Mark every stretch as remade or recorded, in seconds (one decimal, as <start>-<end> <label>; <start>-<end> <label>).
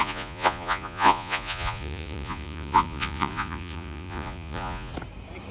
0.0-4.9 remade; 4.9-5.5 recorded